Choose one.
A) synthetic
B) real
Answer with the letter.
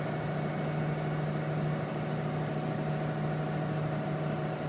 B